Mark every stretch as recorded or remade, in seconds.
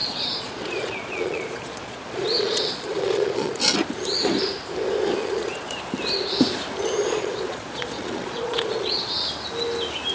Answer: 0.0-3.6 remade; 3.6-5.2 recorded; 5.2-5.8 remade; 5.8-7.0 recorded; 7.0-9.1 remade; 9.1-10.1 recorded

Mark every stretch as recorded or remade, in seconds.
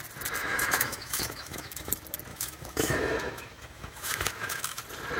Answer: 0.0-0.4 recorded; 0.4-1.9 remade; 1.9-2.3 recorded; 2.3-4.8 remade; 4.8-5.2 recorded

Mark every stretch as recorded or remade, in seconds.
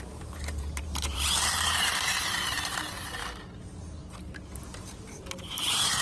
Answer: 0.0-3.2 remade; 3.2-4.8 recorded; 4.8-6.0 remade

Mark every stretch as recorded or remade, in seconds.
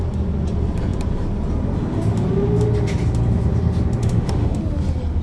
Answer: 0.0-4.0 recorded; 4.0-4.6 remade; 4.6-5.2 recorded